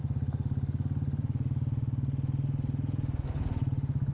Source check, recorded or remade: recorded